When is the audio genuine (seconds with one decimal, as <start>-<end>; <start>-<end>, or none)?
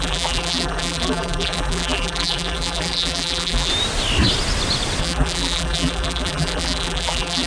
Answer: 3.7-5.0